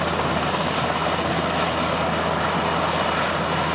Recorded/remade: recorded